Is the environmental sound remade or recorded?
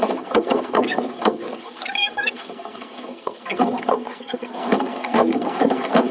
remade